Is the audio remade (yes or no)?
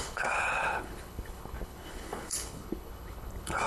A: yes